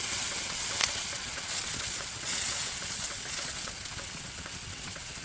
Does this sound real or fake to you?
fake